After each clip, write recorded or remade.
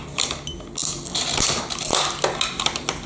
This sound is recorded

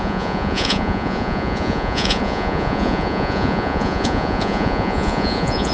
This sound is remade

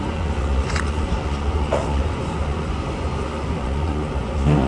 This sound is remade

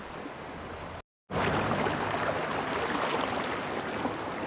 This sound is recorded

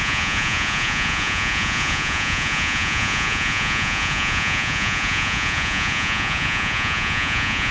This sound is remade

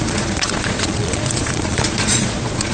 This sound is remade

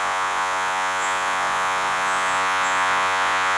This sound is remade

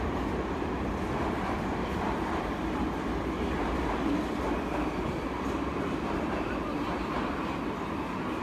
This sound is recorded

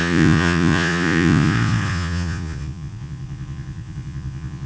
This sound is remade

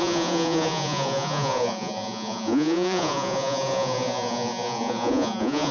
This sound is remade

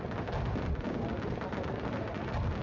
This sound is recorded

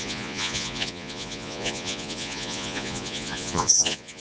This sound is remade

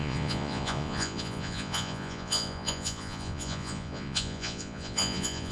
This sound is remade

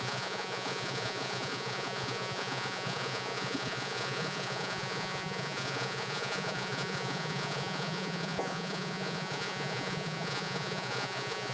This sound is remade